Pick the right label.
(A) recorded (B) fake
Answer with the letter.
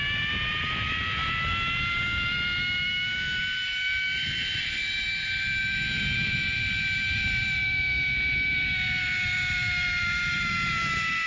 A